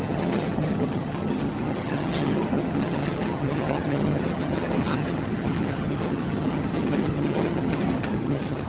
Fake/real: fake